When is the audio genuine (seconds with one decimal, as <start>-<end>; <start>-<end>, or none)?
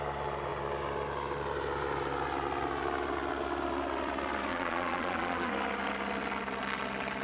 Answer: 0.0-4.5; 5.5-7.2